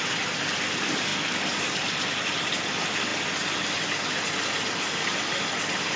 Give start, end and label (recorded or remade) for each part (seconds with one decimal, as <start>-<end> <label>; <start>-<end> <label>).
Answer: 0.0-6.0 recorded